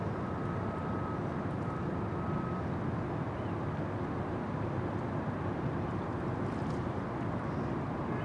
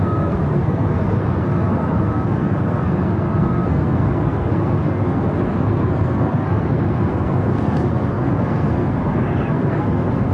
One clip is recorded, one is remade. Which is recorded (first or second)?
first